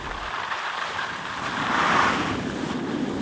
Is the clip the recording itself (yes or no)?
yes